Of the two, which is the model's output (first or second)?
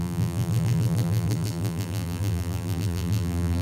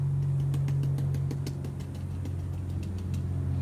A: first